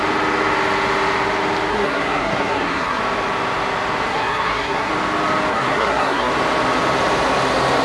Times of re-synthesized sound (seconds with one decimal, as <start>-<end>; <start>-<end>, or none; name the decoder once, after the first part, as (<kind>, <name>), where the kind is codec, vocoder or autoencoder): 1.7-3.0 (codec, SNAC); 4.1-4.9; 5.5-6.3